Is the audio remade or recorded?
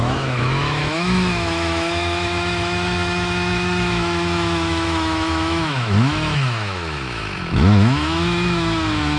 remade